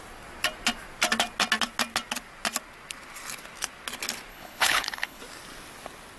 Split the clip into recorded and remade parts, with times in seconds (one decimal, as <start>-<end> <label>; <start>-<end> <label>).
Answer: 0.0-4.3 recorded; 4.3-5.2 remade; 5.2-6.2 recorded